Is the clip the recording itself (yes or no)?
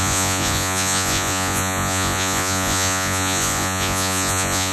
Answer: no